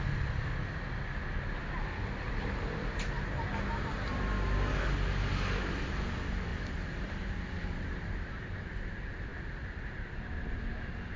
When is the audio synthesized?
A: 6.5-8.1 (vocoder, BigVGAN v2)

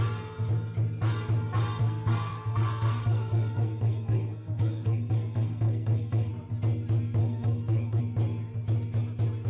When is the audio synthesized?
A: 1.8-6.3 (codec, SNAC); 7.2-8.0

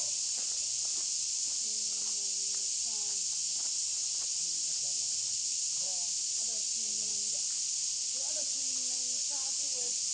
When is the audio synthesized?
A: none

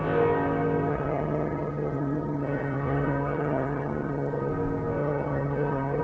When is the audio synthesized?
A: 0.9-4.5 (vocoder, HiFi-GAN); 5.0-6.0

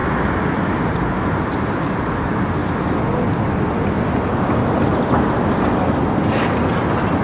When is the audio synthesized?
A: 1.1-2.6 (vocoder, BigVGAN v2)